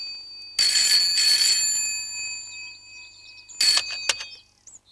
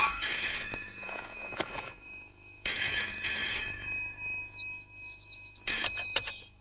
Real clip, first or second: first